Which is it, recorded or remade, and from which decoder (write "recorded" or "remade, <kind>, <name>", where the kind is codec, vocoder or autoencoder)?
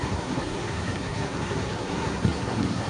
remade, codec, SNAC